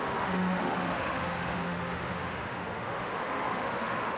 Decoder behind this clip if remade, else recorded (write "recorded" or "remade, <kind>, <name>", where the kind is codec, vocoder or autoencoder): remade, autoencoder, DAC-VAE